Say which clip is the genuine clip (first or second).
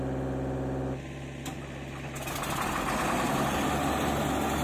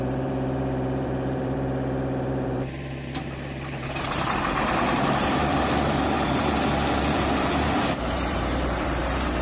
first